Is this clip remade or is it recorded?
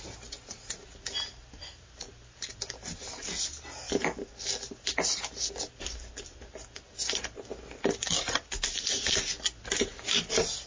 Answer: recorded